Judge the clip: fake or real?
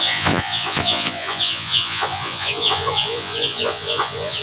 fake